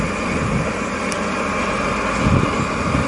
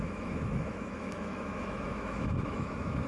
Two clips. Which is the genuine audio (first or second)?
first